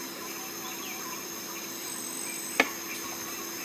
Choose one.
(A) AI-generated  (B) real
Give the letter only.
B